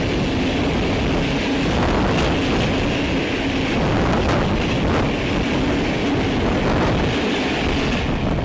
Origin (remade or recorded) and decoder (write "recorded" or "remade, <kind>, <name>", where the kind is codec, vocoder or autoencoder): recorded